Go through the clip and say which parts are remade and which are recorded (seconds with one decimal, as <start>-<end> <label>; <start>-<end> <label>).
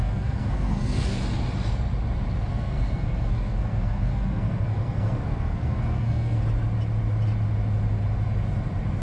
0.0-1.2 remade; 1.2-2.5 recorded; 2.5-6.4 remade; 6.4-9.0 recorded